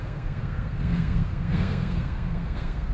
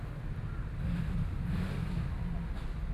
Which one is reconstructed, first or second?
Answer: first